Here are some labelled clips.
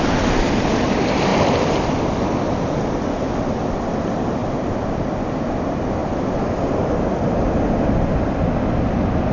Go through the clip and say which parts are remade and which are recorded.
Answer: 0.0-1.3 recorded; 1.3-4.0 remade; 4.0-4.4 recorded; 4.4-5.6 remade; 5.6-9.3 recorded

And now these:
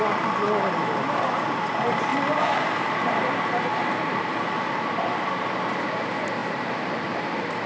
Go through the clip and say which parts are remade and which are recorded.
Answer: 0.0-2.1 recorded; 2.1-4.2 remade; 4.2-6.4 recorded; 6.4-7.0 remade; 7.0-7.7 recorded

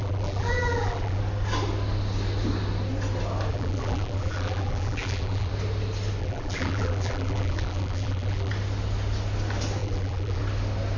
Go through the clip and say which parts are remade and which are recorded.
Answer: 0.0-1.2 remade; 1.2-3.5 recorded; 3.5-5.5 remade; 5.5-6.2 recorded; 6.2-8.5 remade; 8.5-9.8 recorded; 9.8-10.4 remade; 10.4-11.0 recorded